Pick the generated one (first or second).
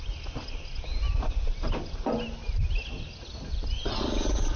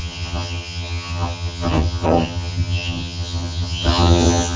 second